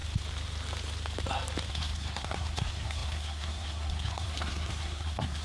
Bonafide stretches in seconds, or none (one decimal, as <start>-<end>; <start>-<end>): 0.0-1.7